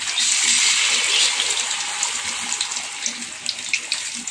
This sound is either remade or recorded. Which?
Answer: recorded